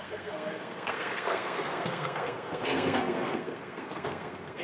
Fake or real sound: fake